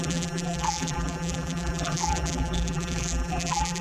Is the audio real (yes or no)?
no